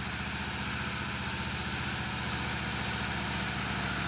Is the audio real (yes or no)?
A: yes